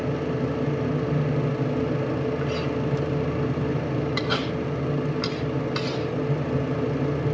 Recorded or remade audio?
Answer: recorded